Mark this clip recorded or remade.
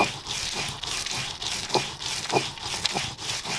recorded